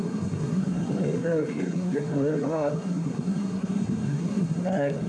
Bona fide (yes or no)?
no